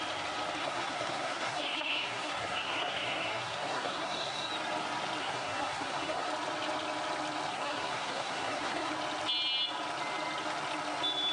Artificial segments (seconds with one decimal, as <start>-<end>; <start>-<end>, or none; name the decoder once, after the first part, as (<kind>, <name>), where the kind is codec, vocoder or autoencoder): 0.6-4.5 (codec, SNAC); 5.2-6.3; 7.5-8.9